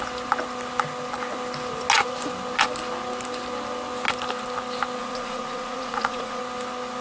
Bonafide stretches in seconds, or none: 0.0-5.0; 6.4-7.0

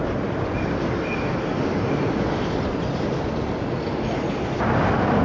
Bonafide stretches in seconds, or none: 0.0-5.2

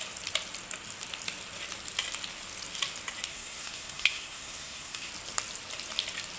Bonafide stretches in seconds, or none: 0.0-3.3; 5.1-6.4

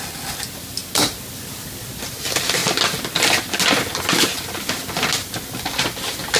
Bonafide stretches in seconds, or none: 0.0-6.4